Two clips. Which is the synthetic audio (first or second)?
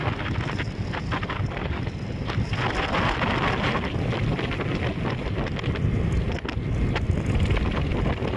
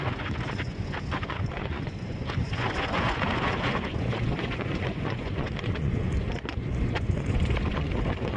second